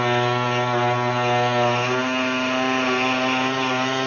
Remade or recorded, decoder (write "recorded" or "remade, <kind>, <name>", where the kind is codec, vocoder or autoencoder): recorded